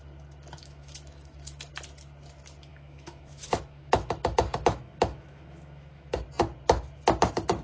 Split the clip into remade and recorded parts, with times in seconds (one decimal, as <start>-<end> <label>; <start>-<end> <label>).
0.0-0.6 recorded; 0.6-1.7 remade; 1.7-2.7 recorded; 2.7-6.1 remade; 6.1-7.6 recorded